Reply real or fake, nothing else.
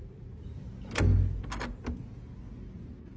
real